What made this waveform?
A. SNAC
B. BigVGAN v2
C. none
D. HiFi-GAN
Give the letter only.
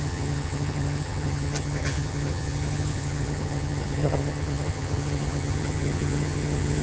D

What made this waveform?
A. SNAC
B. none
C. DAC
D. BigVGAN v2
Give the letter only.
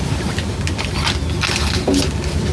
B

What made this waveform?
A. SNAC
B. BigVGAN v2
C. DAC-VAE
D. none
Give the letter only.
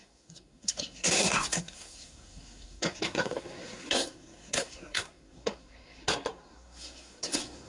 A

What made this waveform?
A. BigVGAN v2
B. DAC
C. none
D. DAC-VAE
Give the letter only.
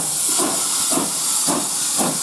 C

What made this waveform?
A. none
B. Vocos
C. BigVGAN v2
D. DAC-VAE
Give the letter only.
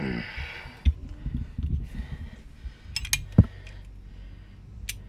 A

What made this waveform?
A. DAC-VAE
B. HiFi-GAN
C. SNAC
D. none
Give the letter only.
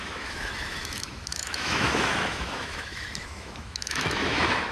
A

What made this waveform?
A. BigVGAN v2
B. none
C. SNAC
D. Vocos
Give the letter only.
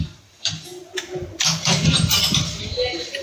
A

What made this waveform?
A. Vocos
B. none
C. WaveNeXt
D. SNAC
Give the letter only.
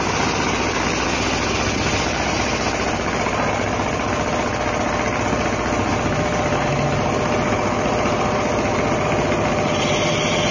B